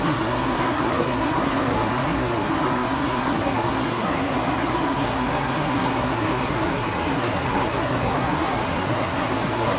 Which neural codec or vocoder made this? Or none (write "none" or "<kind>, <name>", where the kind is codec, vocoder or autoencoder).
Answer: codec, SNAC